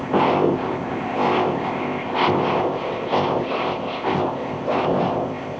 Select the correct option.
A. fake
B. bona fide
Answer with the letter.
A